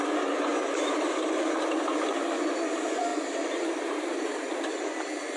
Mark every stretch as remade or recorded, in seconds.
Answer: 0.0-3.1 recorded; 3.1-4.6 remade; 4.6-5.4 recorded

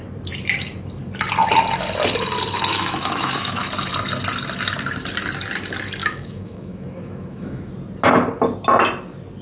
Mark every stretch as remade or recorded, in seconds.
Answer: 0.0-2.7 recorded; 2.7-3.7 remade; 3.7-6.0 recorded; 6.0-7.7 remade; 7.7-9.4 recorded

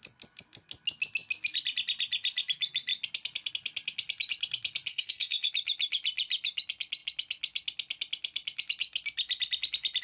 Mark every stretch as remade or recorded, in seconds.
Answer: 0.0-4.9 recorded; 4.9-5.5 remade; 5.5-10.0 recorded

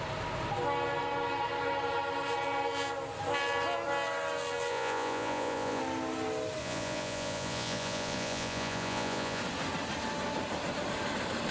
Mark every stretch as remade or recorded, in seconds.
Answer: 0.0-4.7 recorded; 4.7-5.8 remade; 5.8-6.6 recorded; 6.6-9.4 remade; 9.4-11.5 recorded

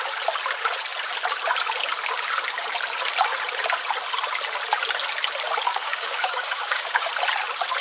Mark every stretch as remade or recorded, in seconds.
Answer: 0.0-5.7 recorded; 5.7-7.1 remade; 7.1-7.8 recorded